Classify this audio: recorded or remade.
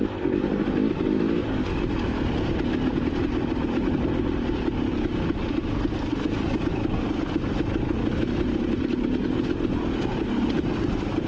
recorded